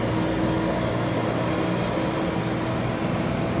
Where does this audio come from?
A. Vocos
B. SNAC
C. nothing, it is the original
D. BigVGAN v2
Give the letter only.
C